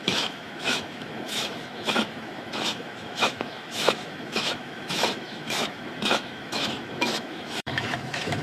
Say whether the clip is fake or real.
fake